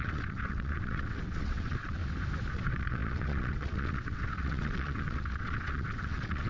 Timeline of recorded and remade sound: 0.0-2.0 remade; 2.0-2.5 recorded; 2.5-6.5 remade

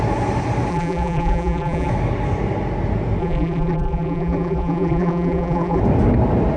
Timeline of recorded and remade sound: 0.0-0.7 recorded; 0.7-1.9 remade; 1.9-3.2 recorded; 3.2-5.8 remade; 5.8-6.6 recorded

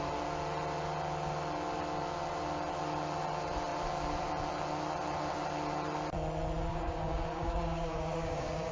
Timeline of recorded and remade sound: 0.0-6.7 recorded; 6.7-8.7 remade